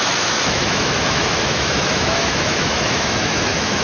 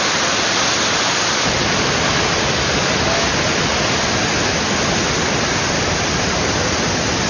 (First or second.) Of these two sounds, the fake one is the first